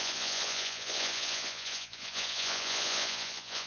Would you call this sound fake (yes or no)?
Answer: yes